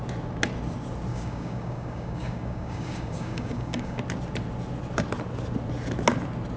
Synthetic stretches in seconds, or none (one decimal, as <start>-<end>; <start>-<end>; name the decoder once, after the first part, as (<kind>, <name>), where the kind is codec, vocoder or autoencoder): 1.1-4.0 (codec, DAC)